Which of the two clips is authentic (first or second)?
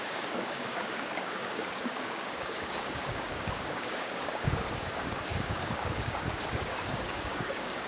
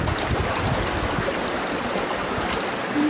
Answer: second